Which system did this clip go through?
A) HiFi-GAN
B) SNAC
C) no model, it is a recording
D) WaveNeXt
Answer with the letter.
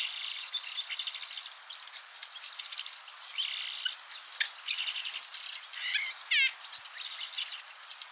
C